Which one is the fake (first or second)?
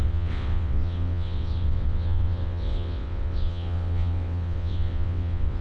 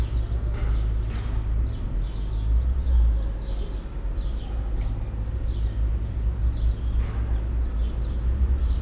first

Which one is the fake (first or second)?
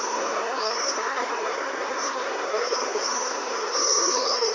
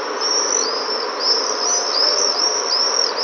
first